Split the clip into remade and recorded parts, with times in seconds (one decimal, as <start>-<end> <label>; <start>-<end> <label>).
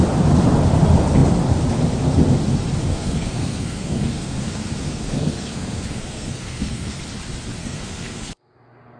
0.0-2.9 recorded; 2.9-7.0 remade; 7.0-7.6 recorded; 7.6-8.3 remade; 8.3-9.0 recorded